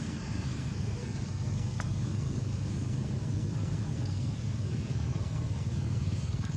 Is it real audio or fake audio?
fake